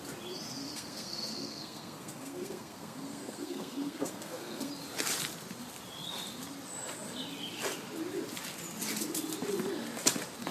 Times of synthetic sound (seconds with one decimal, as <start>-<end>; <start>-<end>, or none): 0.6-4.7